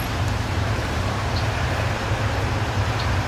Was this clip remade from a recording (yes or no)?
yes